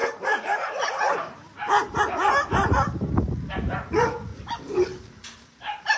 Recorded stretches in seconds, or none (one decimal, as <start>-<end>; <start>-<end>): 2.0-4.3